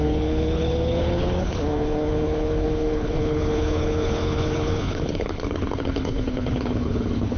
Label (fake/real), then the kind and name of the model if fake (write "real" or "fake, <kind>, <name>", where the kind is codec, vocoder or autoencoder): fake, codec, HILCodec